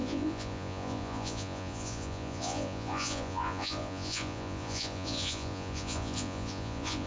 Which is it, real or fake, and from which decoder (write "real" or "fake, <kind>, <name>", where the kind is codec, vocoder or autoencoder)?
fake, vocoder, Vocos